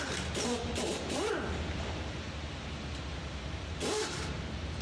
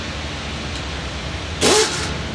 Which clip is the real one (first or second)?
second